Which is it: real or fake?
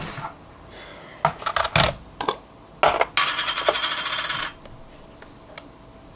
real